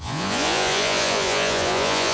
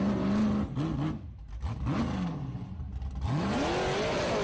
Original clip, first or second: second